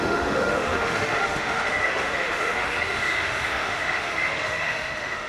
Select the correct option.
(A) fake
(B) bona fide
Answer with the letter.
A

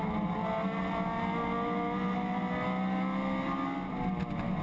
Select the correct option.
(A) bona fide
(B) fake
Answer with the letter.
A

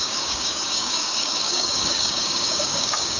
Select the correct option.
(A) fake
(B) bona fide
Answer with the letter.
A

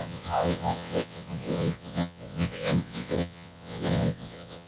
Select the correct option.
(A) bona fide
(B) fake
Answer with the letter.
B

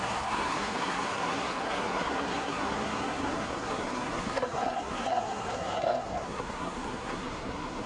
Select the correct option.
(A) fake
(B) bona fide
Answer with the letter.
A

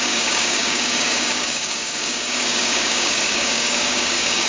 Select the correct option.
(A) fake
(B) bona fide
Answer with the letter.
A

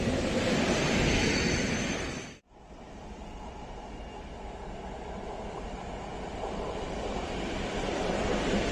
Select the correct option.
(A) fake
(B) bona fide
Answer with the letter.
A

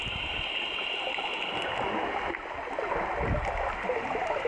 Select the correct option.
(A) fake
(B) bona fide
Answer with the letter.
B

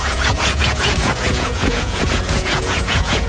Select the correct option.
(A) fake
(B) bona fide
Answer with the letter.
A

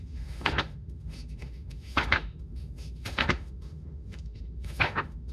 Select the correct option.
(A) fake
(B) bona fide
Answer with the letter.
A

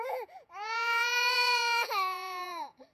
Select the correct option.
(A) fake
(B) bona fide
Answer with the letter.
A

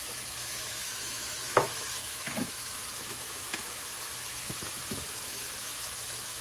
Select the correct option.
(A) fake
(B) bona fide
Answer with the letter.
A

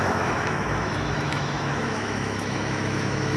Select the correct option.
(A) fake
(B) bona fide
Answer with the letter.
A